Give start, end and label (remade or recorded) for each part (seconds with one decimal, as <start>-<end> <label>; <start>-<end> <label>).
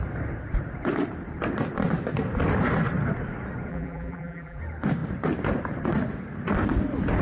0.0-3.7 recorded; 3.7-4.6 remade; 4.6-7.2 recorded